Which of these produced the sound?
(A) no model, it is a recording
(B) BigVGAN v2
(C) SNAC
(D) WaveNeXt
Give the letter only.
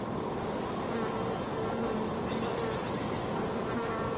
A